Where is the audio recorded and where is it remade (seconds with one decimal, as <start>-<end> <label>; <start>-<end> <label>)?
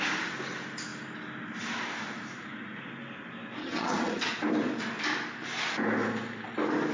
0.0-3.6 recorded; 3.6-4.2 remade; 4.2-6.9 recorded